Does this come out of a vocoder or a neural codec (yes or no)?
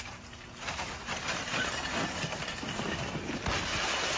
no